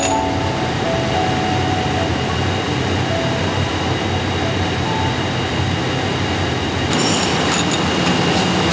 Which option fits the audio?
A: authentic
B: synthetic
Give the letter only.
A